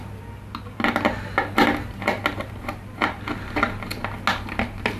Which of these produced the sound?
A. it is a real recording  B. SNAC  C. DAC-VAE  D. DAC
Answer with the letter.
A